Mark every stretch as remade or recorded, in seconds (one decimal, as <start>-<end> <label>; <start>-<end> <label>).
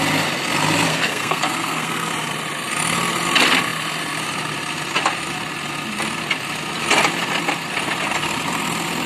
0.0-0.9 recorded; 0.9-2.1 remade; 2.1-9.1 recorded